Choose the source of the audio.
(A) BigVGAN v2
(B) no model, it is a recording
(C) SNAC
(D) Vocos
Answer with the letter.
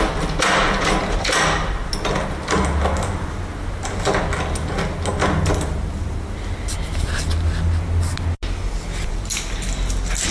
B